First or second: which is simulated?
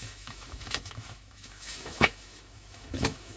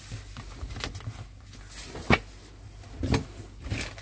first